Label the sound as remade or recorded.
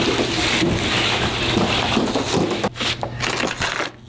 recorded